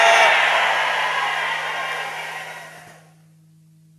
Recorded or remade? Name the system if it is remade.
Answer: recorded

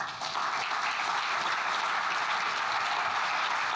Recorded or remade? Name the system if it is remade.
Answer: recorded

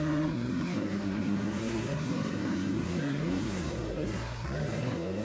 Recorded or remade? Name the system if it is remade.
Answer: remade, codec, SNAC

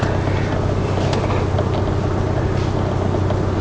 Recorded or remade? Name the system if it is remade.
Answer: recorded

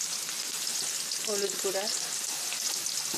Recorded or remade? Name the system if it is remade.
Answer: recorded